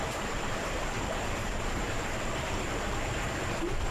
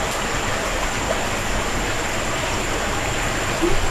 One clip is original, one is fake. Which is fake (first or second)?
first